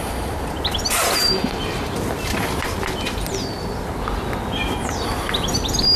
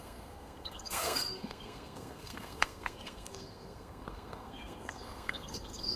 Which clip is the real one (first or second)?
first